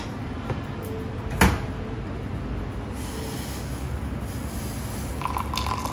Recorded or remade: recorded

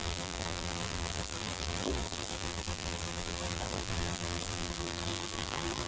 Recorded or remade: remade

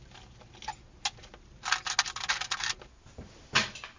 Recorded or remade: recorded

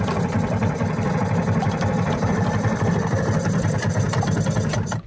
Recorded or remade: remade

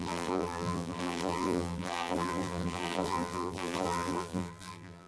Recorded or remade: remade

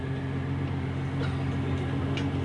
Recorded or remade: recorded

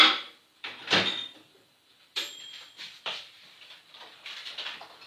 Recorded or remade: remade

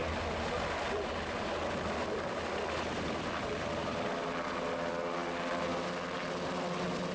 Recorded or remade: recorded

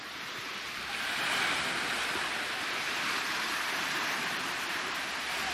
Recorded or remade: remade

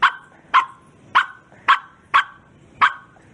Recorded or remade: remade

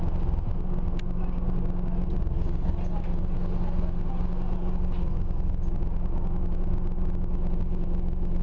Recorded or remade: recorded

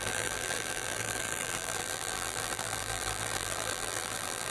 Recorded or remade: remade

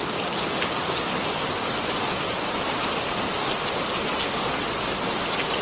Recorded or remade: recorded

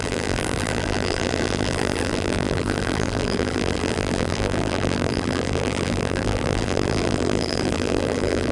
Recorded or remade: remade